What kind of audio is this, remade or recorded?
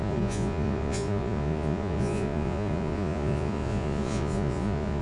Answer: remade